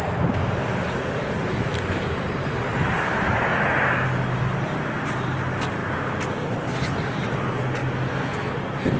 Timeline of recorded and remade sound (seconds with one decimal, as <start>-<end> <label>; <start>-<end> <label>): 0.0-3.5 remade; 3.5-4.5 recorded; 4.5-5.8 remade; 5.8-6.8 recorded; 6.8-7.8 remade; 7.8-8.5 recorded; 8.5-9.0 remade